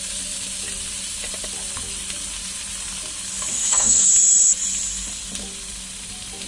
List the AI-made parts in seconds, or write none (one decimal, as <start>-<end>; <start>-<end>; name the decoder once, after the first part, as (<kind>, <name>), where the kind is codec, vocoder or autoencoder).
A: 3.5-4.1 (codec, SNAC)